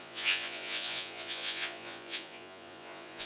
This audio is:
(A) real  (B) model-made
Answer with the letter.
B